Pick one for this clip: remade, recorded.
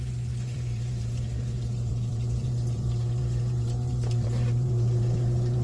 remade